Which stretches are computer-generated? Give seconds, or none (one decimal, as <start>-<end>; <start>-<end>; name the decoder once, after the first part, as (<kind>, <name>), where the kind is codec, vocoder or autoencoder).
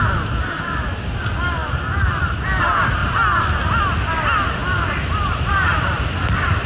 1.6-2.6 (vocoder, BigVGAN v2); 3.0-3.8; 4.6-6.7